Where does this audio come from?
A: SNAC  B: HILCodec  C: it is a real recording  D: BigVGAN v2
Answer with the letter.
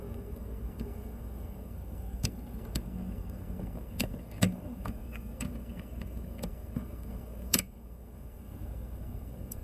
A